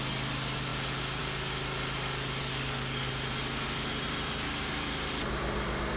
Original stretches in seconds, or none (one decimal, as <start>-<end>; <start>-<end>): 0.0-2.4; 3.1-6.0